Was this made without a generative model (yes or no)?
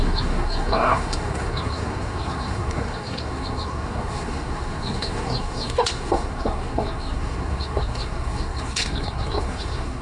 no